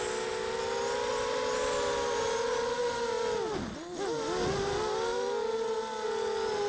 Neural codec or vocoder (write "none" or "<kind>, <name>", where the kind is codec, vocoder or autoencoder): none